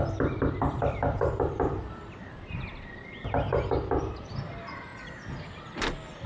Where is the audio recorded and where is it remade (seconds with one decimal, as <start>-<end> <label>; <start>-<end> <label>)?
0.0-2.7 remade; 2.7-4.0 recorded; 4.0-4.9 remade; 4.9-6.3 recorded